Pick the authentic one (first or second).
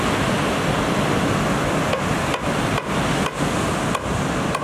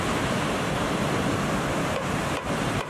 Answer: first